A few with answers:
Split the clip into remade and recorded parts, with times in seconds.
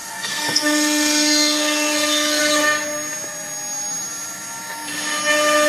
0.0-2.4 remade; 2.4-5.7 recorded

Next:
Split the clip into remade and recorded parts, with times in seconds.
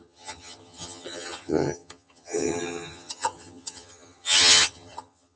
0.0-5.4 remade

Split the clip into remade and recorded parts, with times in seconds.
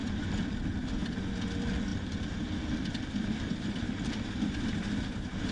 0.0-1.9 recorded; 1.9-5.5 remade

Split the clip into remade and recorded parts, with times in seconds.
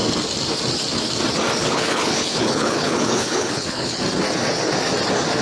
0.0-1.6 recorded; 1.6-4.0 remade; 4.0-5.4 recorded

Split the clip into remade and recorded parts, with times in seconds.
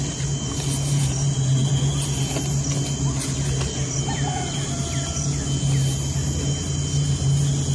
0.0-7.7 recorded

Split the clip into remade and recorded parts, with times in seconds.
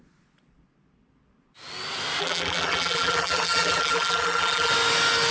0.0-2.2 recorded; 2.2-4.7 remade; 4.7-5.3 recorded